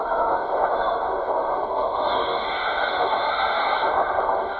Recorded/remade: remade